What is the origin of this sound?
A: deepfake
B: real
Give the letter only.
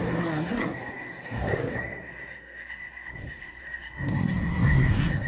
A